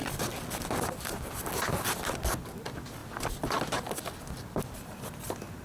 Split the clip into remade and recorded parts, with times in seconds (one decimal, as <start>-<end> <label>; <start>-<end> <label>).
0.0-5.6 recorded